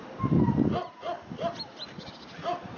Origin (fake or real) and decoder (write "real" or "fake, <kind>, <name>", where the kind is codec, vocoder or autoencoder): real